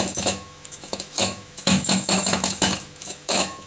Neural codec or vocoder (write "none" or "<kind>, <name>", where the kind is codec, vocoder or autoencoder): autoencoder, DAC-VAE